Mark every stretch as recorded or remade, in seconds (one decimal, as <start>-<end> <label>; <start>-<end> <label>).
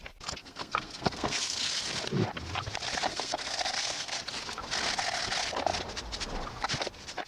0.0-0.4 recorded; 0.4-1.7 remade; 1.7-3.1 recorded; 3.1-4.2 remade; 4.2-7.3 recorded